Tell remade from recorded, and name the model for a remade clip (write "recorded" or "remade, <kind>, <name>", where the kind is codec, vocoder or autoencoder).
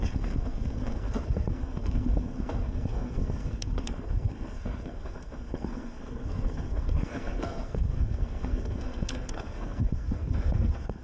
remade, codec, SNAC